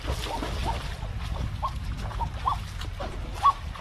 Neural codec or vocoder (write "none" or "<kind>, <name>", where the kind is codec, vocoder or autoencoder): none